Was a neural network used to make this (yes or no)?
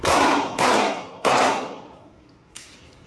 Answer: yes